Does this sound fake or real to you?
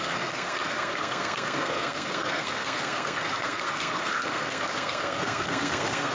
fake